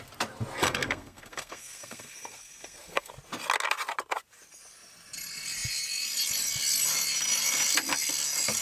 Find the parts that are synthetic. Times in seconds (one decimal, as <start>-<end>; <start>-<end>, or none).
0.6-3.1